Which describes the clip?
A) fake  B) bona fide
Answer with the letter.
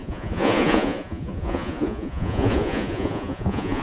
A